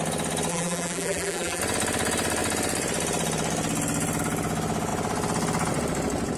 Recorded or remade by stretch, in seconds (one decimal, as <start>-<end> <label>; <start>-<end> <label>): 0.0-0.5 recorded; 0.5-1.6 remade; 1.6-6.4 recorded